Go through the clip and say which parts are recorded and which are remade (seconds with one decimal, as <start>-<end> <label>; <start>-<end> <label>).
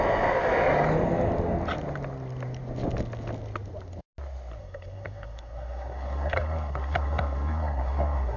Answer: 0.0-4.6 recorded; 4.6-8.4 remade